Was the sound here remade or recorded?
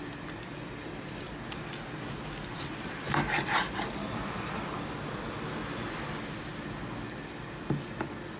recorded